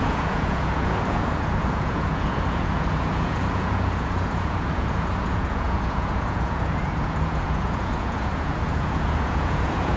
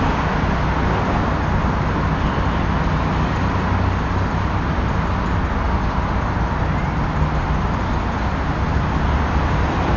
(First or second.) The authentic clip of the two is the second